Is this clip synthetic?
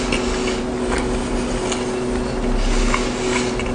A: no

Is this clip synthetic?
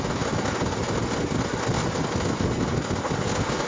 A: no